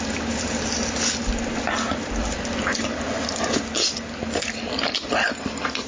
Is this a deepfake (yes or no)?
no